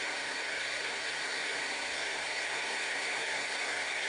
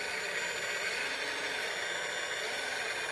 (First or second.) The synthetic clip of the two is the first